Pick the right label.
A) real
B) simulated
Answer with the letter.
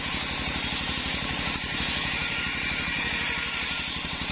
B